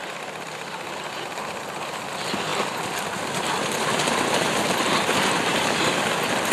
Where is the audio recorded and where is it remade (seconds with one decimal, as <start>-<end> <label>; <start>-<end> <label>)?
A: 0.0-6.5 recorded